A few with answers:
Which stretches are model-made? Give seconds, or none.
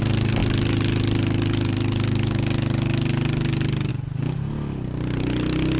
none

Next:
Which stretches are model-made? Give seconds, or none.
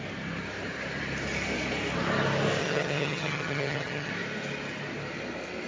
2.6-4.1 (vocoder, HiFi-GAN)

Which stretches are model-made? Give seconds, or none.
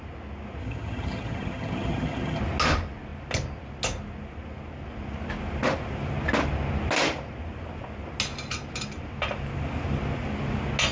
0.6-2.4 (vocoder, HiFi-GAN)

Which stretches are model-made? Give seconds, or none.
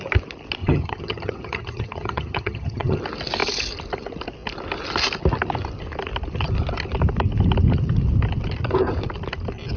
0.6-3.0 (vocoder, HiFi-GAN)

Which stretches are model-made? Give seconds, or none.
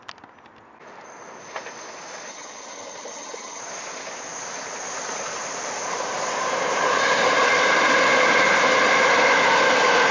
2.3-3.6 (vocoder, HiFi-GAN)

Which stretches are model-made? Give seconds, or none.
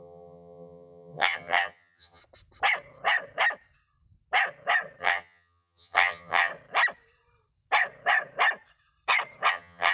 0.0-2.2 (vocoder, HiFi-GAN); 5.0-6.5; 9.5-9.9